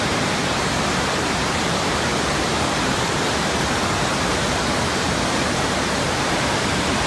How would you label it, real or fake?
fake